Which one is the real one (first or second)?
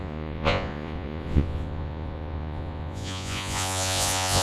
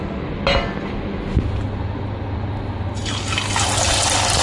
second